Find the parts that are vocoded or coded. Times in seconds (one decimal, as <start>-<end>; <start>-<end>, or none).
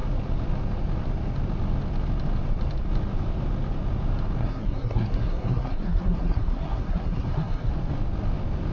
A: 4.4-7.7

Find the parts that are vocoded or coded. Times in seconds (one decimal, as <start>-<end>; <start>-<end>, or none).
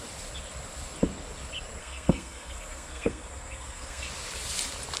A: 1.8-4.1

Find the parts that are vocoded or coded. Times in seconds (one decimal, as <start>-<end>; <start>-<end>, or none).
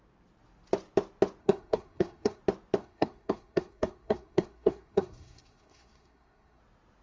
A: 1.4-2.4; 2.8-6.6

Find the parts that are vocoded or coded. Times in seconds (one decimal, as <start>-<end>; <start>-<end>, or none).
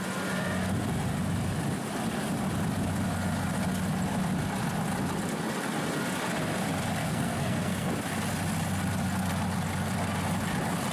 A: 7.0-7.9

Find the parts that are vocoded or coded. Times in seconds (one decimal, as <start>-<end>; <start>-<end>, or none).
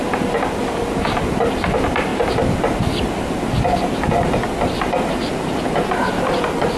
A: none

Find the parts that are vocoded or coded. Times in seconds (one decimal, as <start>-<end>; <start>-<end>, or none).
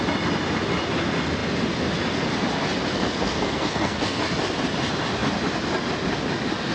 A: 2.9-4.2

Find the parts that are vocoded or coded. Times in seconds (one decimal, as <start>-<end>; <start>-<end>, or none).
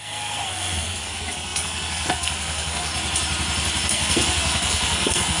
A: 0.0-2.9; 3.9-5.4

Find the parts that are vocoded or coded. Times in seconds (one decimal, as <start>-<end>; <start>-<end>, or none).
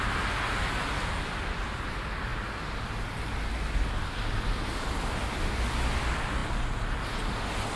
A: none